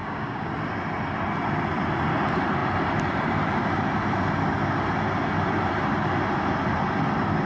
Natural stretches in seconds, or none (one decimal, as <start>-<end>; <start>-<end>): 0.5-7.5